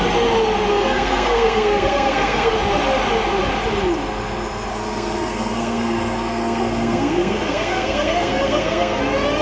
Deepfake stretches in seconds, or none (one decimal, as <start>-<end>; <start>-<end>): 0.7-2.5; 4.7-9.0